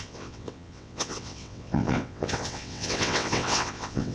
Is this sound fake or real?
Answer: fake